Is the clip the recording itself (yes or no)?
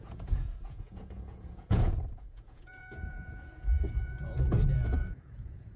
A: no